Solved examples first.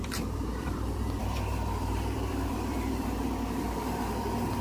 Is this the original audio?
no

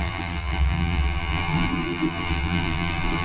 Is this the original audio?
no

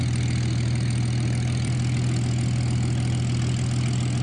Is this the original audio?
yes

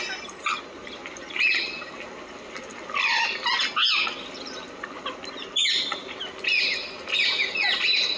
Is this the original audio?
yes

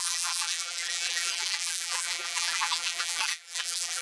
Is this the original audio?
no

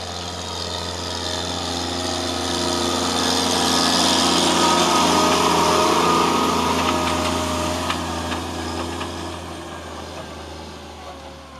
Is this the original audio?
yes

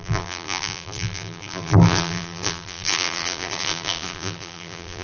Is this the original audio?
no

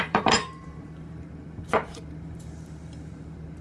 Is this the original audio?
no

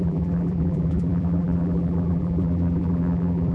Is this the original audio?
no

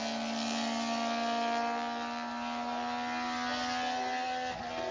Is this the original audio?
yes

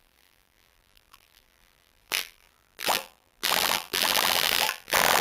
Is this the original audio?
no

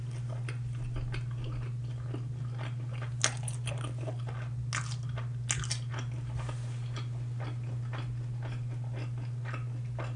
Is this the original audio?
yes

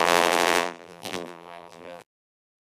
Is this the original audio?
no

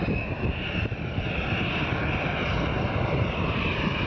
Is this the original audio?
yes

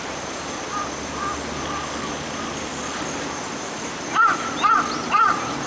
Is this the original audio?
yes